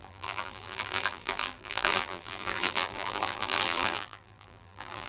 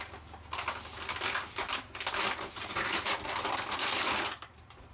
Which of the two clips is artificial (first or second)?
first